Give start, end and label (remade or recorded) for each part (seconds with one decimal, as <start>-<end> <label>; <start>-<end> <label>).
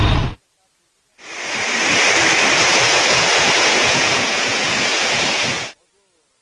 0.0-2.7 recorded; 2.7-5.9 remade; 5.9-6.4 recorded